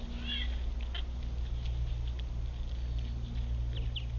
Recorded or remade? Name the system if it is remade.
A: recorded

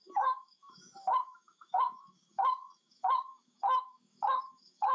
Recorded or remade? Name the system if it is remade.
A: remade, autoencoder, DAC-VAE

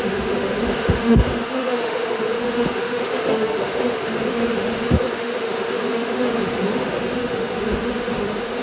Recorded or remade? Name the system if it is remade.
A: remade, autoencoder, DAC-VAE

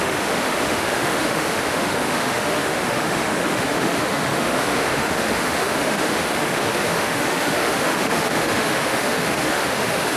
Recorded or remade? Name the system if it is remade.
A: remade, autoencoder, DAC-VAE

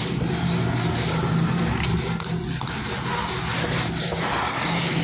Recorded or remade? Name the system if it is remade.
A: recorded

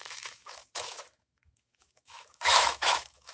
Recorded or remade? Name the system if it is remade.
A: remade, autoencoder, DAC-VAE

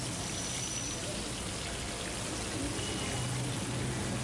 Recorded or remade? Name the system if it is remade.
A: recorded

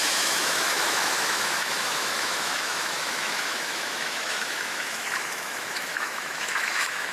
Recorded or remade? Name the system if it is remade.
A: remade, autoencoder, DAC-VAE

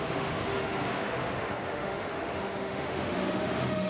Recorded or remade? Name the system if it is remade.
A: remade, autoencoder, DAC-VAE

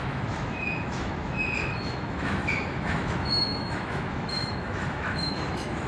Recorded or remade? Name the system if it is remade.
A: remade, autoencoder, DAC-VAE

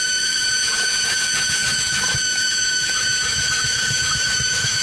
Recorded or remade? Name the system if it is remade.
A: remade, autoencoder, DAC-VAE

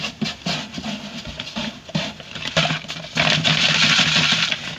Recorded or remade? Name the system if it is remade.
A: recorded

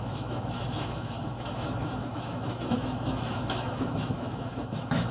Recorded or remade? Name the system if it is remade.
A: remade, autoencoder, DAC-VAE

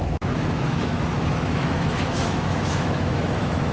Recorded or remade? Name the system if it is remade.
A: remade, autoencoder, DAC-VAE